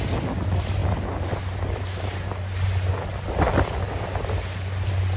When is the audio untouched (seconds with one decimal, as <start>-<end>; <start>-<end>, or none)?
0.0-5.2